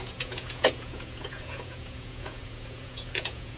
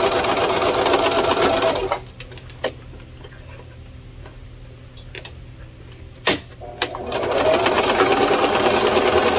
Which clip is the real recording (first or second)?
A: second